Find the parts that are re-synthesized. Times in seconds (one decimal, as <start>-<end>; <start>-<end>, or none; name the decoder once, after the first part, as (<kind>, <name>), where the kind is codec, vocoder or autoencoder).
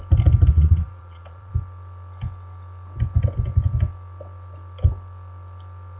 0.5-1.5 (vocoder, Vocos)